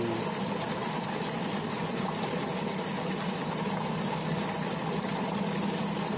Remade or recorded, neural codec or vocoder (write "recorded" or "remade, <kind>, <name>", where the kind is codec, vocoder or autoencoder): recorded